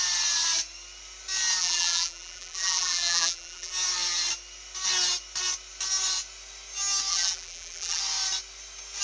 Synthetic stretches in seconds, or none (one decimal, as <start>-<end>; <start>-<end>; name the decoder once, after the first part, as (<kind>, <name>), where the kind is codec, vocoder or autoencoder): 1.6-3.7 (vocoder, BigVGAN v2); 7.1-8.0